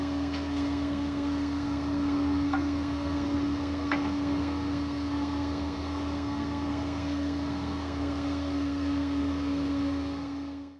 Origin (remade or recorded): remade